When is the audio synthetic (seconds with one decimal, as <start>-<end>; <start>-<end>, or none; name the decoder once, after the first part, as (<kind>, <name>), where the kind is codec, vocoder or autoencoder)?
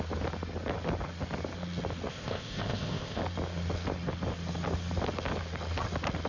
2.1-3.2 (codec, ZipCodec)